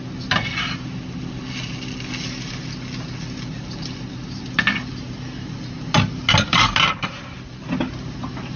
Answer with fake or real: real